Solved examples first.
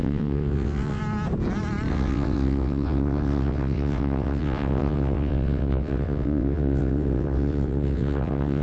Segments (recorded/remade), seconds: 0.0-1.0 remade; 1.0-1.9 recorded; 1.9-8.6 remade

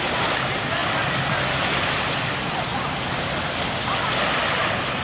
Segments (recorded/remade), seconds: 0.0-5.0 recorded